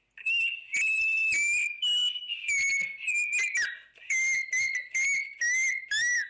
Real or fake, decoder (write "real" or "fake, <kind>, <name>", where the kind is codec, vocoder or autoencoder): real